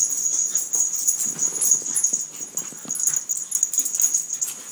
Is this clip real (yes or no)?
yes